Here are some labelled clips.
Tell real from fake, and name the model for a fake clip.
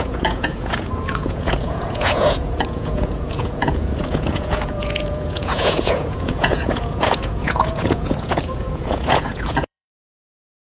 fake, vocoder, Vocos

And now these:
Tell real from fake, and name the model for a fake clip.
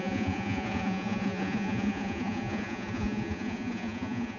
fake, vocoder, Vocos